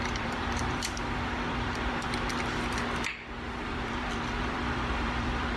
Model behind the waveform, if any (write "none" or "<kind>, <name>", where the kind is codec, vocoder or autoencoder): vocoder, BigVGAN v2